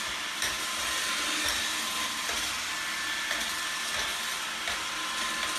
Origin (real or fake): real